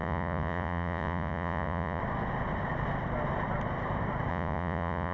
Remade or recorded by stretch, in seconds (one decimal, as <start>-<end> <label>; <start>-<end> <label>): 0.0-2.0 remade; 2.0-4.3 recorded; 4.3-5.1 remade